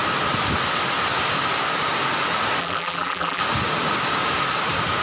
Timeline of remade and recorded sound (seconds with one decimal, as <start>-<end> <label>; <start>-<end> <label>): 0.0-2.6 recorded; 2.6-3.4 remade; 3.4-5.0 recorded